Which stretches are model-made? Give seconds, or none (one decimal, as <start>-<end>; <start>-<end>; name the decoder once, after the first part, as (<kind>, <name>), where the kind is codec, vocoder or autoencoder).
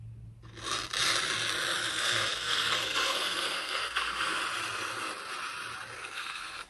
1.9-4.4 (codec, SNAC); 6.0-6.7